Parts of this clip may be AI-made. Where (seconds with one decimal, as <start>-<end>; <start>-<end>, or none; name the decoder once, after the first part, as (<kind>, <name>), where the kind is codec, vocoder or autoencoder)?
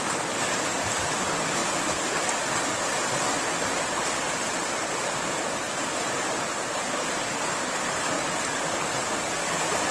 none